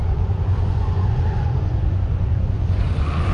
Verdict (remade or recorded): remade